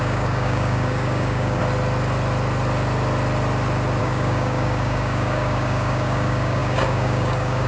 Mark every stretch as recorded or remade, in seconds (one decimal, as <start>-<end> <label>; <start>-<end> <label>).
0.0-1.6 remade; 1.6-4.0 recorded; 4.0-7.7 remade